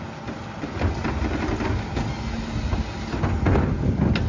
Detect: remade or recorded recorded